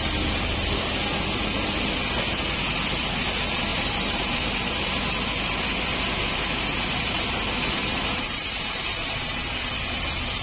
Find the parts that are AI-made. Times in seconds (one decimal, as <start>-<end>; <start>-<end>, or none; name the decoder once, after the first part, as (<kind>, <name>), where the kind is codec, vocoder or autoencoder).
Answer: 3.7-4.7 (vocoder, BigVGAN v2); 7.8-9.8